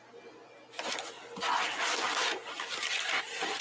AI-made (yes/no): no